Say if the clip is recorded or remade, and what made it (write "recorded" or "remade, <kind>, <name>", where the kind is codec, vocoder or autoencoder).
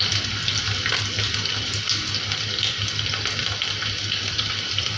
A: remade, vocoder, BigVGAN v2